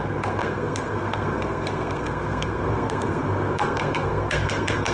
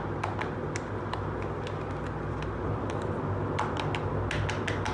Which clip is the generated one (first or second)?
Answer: first